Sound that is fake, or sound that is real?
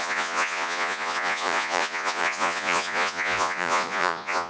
fake